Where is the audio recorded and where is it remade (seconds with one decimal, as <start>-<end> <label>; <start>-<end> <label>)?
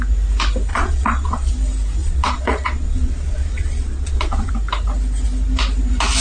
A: 0.0-0.7 recorded; 0.7-1.5 remade; 1.5-2.0 recorded; 2.0-4.5 remade; 4.5-6.2 recorded